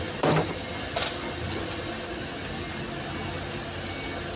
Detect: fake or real real